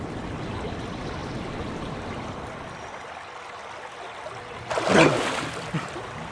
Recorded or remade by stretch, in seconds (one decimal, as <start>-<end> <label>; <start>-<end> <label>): 0.0-6.3 recorded